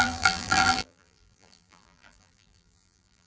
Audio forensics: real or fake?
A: fake